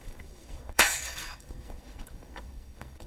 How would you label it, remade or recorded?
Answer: remade